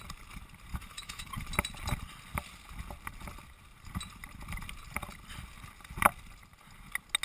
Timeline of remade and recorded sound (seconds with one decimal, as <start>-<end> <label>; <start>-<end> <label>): 0.0-0.7 recorded; 0.7-1.3 remade; 1.3-7.2 recorded